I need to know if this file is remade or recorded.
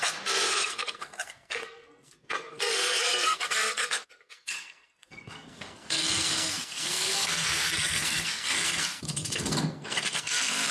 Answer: remade